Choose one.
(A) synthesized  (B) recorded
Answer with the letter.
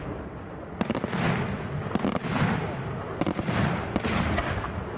B